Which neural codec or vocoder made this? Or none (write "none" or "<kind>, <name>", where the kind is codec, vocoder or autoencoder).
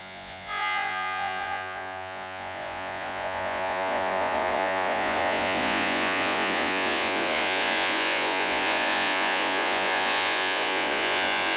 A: vocoder, Vocos